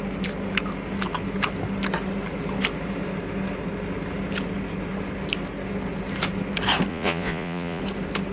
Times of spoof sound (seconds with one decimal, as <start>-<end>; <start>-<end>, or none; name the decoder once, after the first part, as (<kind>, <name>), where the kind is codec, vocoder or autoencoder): 6.9-7.8 (vocoder, Vocos)